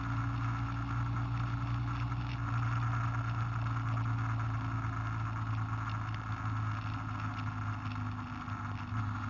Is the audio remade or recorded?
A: recorded